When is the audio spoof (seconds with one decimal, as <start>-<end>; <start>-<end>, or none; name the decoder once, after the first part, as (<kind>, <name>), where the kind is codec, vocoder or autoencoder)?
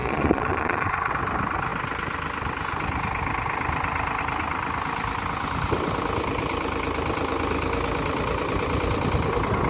0.0-1.1 (vocoder, Vocos)